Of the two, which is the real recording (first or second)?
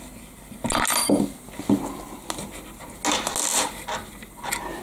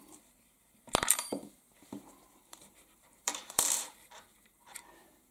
first